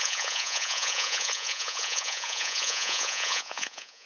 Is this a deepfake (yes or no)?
yes